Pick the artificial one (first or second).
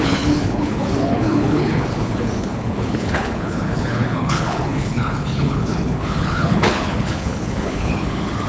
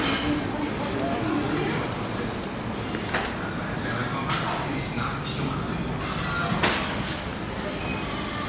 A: first